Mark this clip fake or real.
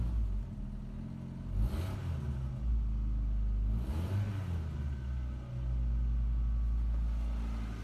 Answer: real